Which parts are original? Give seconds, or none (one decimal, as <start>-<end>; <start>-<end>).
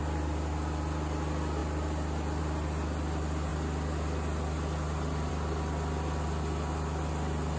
0.0-7.6